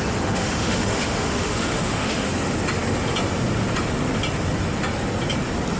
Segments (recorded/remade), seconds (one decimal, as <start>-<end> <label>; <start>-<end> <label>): 0.0-0.4 recorded; 0.4-2.3 remade; 2.3-5.8 recorded